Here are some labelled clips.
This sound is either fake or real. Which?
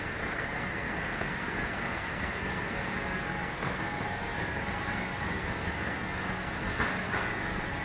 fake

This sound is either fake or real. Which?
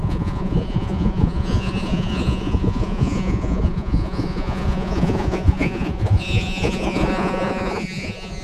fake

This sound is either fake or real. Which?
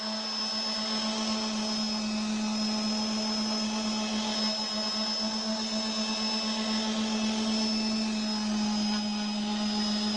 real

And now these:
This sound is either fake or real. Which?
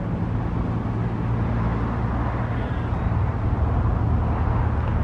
real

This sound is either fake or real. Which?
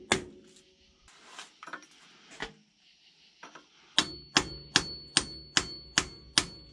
real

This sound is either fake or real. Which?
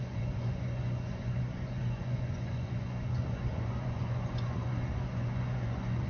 fake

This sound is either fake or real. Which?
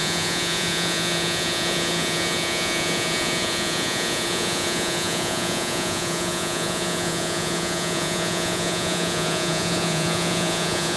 fake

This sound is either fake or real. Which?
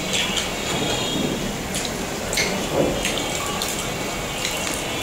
real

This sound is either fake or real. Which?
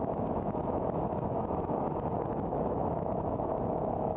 fake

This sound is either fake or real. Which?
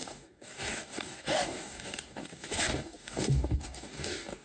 fake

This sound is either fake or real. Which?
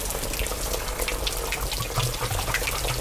real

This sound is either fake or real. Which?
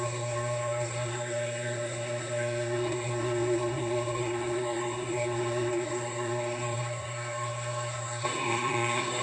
fake